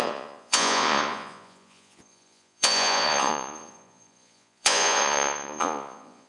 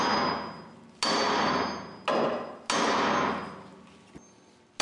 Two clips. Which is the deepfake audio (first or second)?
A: first